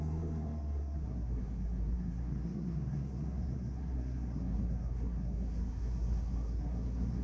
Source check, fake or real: fake